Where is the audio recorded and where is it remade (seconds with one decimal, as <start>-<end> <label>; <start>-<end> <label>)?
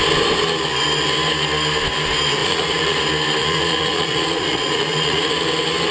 0.0-2.4 recorded; 2.4-3.0 remade; 3.0-3.4 recorded; 3.4-5.3 remade; 5.3-5.9 recorded